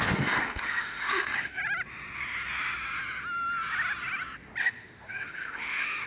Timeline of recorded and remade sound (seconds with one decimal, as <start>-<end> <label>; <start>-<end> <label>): 0.0-1.6 remade; 1.6-4.6 recorded; 4.6-6.1 remade